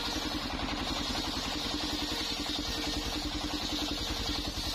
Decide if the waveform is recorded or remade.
recorded